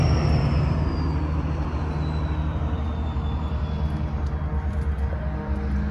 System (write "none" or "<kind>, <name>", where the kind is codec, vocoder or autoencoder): none